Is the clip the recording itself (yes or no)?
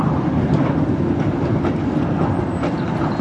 yes